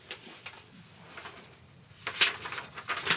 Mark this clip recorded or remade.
recorded